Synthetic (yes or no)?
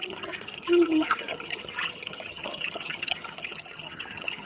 yes